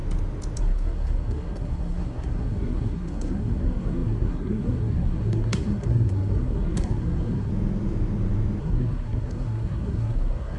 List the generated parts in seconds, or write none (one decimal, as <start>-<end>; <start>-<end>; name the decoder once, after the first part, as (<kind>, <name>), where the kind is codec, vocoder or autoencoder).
0.6-7.5 (codec, SNAC); 8.6-10.6